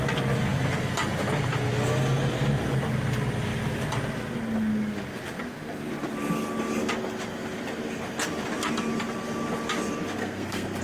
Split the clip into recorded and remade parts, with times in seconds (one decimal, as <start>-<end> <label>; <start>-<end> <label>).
0.0-10.2 recorded; 10.2-10.8 remade